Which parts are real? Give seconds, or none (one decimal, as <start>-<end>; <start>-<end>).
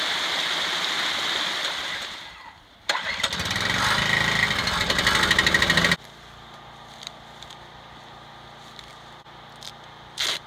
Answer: 0.0-10.5